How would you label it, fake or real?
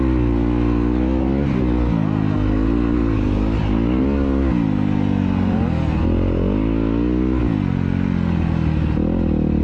real